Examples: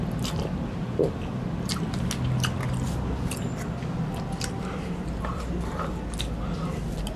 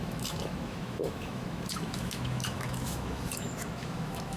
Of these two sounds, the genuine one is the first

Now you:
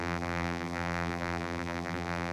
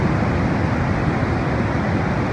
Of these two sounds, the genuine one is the second